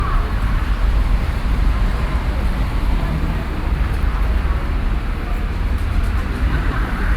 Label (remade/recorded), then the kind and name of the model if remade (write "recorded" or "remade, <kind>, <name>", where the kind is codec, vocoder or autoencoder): remade, vocoder, BigVGAN v2